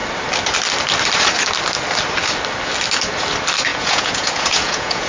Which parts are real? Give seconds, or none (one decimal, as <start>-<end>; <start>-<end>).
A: 0.0-3.7